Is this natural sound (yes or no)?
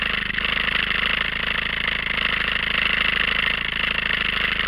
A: yes